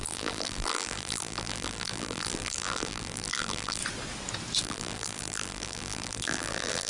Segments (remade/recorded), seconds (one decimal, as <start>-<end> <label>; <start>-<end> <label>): 0.0-3.8 remade; 3.8-4.6 recorded; 4.6-6.9 remade